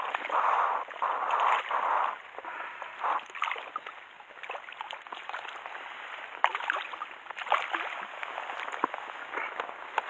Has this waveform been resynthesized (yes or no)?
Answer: no